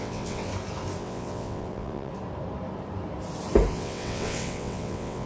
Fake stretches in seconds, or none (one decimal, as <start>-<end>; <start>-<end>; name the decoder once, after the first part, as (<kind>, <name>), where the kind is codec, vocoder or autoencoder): 0.0-0.5 (vocoder, WaveNeXt); 1.0-2.1; 3.7-5.3